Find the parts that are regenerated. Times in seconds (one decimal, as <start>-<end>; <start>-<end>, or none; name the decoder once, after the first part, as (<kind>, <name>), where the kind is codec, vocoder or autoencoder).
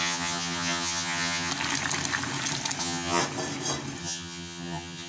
0.0-1.5 (vocoder, HiFi-GAN); 2.8-3.2; 4.0-5.1